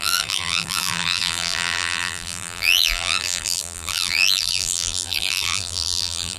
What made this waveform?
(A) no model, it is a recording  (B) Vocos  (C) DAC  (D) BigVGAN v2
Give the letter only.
D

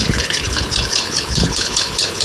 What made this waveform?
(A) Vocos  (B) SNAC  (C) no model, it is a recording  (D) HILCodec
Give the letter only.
D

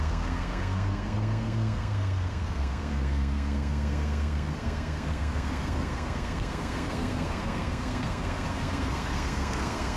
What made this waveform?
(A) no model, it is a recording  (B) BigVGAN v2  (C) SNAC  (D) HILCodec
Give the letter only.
C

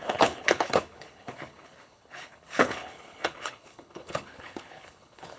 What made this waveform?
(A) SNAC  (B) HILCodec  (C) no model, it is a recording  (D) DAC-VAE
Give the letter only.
B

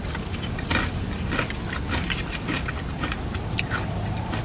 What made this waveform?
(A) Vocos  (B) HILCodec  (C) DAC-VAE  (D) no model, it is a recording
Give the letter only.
D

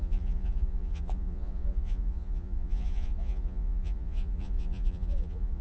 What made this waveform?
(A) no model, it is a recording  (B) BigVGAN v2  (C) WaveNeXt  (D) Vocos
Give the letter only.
D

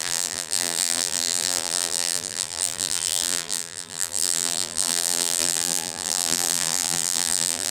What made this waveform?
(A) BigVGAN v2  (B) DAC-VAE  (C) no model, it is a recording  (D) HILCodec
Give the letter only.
A